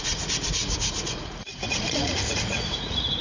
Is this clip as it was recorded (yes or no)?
no